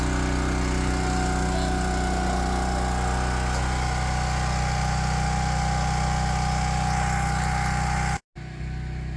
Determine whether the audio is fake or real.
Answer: real